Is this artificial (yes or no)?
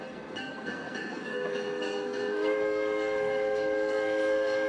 yes